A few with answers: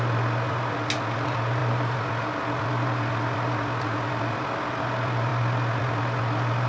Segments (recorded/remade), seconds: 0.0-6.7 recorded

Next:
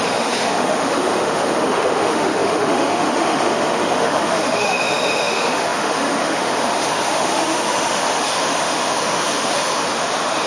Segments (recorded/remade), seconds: 0.0-10.5 remade